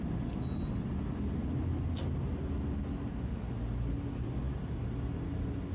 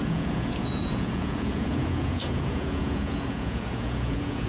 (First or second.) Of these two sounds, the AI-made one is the second